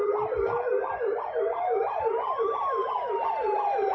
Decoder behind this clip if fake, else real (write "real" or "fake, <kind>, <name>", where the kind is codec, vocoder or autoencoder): real